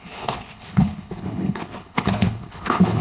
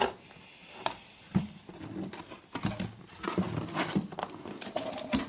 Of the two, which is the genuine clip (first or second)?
second